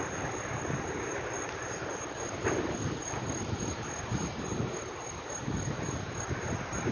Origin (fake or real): real